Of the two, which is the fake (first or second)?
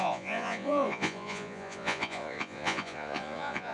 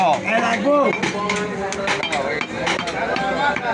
first